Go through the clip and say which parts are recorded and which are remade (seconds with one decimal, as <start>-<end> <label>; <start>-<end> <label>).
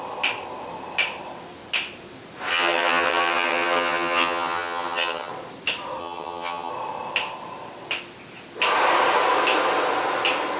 0.0-2.5 recorded; 2.5-5.3 remade; 5.3-6.0 recorded; 6.0-6.7 remade; 6.7-10.6 recorded